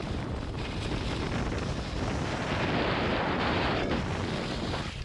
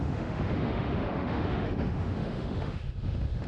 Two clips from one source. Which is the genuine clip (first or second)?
first